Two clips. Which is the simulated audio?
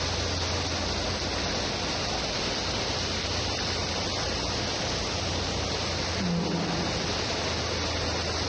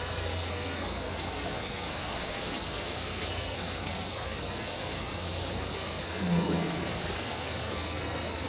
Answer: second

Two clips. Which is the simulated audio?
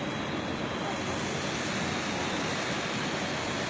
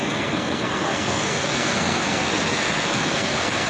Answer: second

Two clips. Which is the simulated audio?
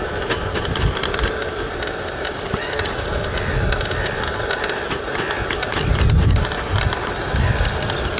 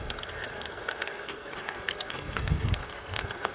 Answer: second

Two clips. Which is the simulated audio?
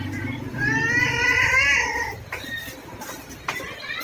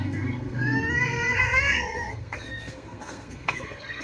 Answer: second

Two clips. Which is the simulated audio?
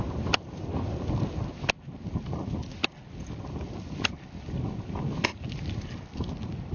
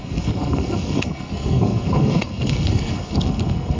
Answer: second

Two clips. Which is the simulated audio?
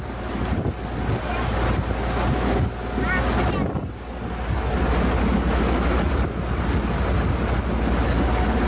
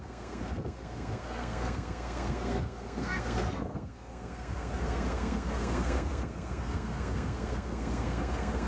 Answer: second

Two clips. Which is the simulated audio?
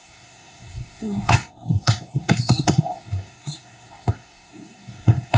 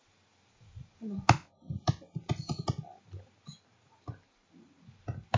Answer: first